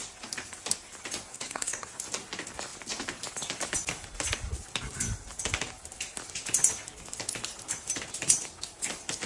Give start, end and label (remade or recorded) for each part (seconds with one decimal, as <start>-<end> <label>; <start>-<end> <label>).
0.0-1.3 recorded; 1.3-1.9 remade; 1.9-9.3 recorded